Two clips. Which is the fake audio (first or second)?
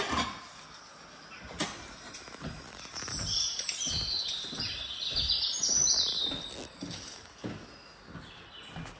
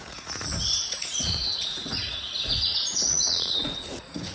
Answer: second